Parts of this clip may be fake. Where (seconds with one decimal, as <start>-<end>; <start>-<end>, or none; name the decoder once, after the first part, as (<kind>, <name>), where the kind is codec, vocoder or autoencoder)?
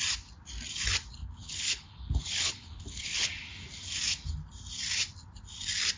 1.2-3.3 (codec, HILCodec)